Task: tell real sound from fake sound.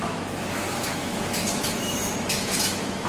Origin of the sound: fake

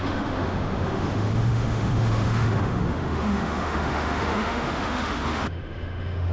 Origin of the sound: fake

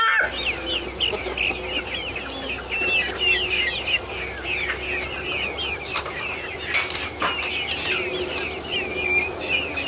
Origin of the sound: real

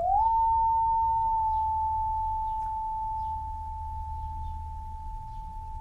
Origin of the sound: real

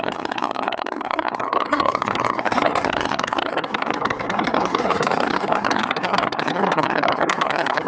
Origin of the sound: fake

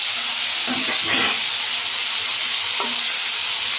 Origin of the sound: real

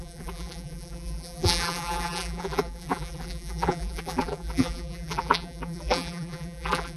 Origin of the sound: fake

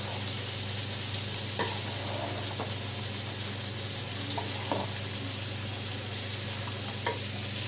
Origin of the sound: real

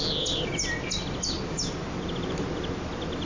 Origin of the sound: real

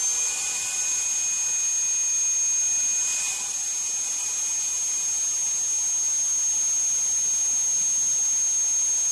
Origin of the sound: real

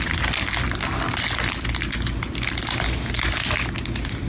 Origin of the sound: real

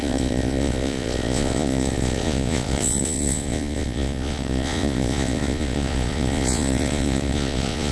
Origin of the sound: fake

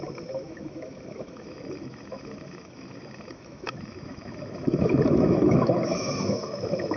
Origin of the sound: fake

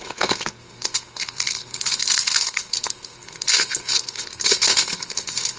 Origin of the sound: fake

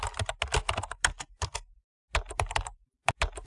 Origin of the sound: real